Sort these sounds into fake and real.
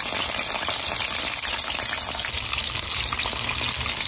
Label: real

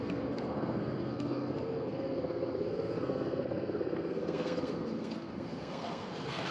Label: fake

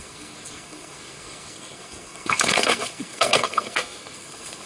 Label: fake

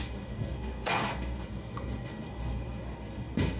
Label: fake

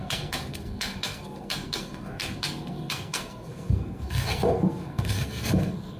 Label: fake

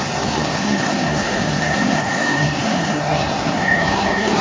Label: fake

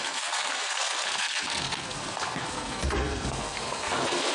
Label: fake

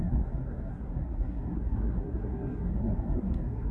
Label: fake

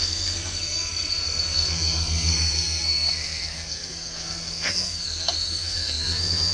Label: fake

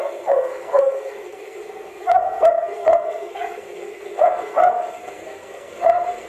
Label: fake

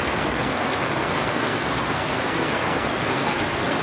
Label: fake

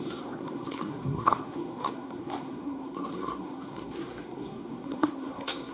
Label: fake